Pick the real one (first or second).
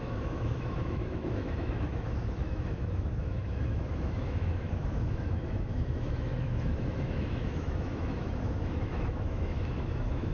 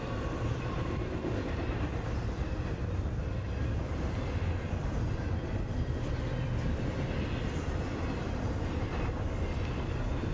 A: second